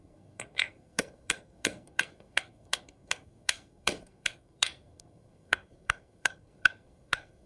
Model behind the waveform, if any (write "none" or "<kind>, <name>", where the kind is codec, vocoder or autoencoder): codec, SNAC